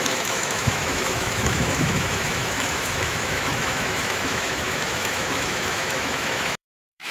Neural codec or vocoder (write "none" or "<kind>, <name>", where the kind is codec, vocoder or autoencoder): autoencoder, DAC-VAE